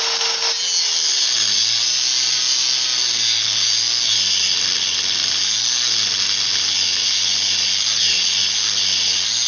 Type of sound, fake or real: real